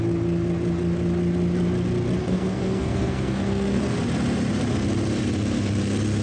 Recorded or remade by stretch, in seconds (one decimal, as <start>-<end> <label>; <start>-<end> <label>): 0.0-2.2 recorded; 2.2-3.8 remade; 3.8-6.2 recorded